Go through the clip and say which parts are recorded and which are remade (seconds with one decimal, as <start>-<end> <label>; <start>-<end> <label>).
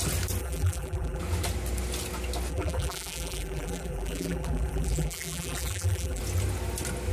0.0-0.4 recorded; 0.4-1.2 remade; 1.2-2.5 recorded; 2.5-6.2 remade; 6.2-7.1 recorded